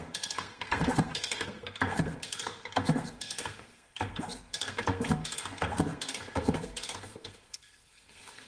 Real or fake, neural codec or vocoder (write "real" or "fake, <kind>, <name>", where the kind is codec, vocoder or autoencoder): fake, codec, SNAC